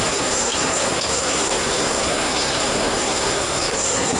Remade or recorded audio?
remade